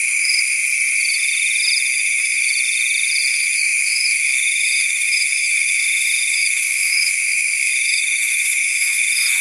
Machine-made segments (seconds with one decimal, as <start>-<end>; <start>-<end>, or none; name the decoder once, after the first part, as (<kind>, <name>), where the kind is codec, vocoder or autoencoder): 0.0-0.6 (autoencoder, DAC-VAE); 1.9-2.5; 3.3-9.4